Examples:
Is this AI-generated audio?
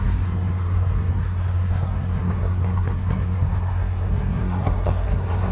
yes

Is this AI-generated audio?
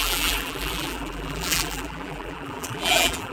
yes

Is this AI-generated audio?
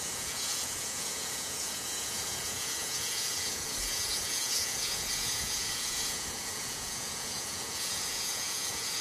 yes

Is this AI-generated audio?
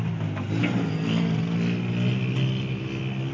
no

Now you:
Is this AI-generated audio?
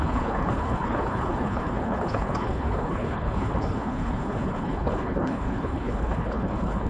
yes